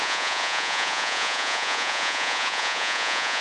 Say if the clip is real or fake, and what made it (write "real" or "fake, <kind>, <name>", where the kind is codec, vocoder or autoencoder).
fake, vocoder, Vocos